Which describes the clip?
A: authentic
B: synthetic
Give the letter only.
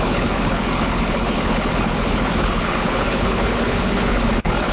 B